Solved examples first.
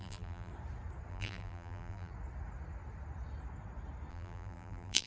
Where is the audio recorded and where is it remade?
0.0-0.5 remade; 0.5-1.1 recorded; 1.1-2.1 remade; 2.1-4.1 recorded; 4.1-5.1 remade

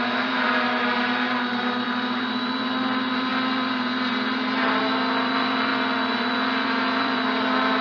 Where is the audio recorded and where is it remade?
0.0-7.8 remade